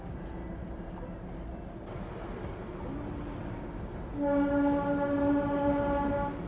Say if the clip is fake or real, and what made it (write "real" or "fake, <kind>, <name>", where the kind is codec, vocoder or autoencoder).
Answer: real